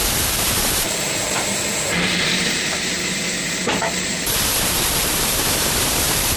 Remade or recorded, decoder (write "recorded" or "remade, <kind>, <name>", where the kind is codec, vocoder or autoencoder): remade, vocoder, BigVGAN v2